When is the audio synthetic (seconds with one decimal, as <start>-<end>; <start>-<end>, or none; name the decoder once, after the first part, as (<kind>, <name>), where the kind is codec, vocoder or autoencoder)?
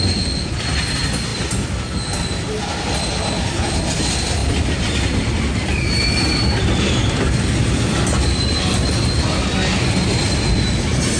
none